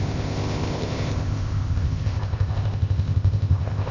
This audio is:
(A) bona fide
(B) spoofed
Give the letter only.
B